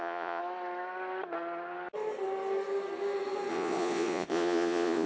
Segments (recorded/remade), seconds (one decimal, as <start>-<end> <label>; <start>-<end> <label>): 0.0-0.4 remade; 0.4-3.5 recorded; 3.5-5.1 remade